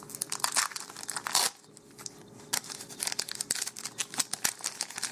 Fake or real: real